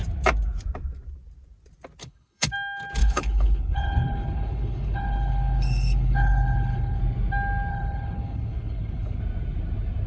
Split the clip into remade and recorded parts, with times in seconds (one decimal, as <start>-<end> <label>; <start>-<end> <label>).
0.0-2.0 recorded; 2.0-2.5 remade; 2.5-3.0 recorded; 3.0-7.0 remade; 7.0-7.7 recorded; 7.7-9.2 remade; 9.2-10.1 recorded